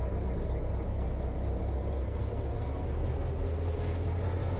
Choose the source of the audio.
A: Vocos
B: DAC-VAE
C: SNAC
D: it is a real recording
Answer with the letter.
C